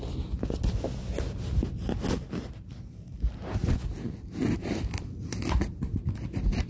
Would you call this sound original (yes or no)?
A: yes